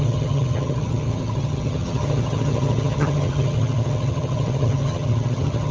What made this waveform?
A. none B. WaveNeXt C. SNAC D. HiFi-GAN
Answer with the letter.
D